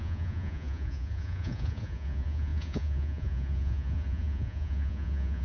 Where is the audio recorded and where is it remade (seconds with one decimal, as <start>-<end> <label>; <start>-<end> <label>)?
0.0-5.4 remade